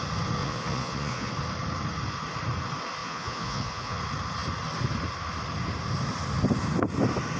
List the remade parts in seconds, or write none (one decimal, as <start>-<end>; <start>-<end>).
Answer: 0.4-1.3; 3.0-4.0